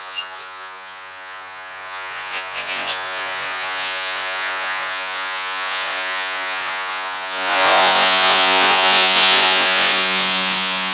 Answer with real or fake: fake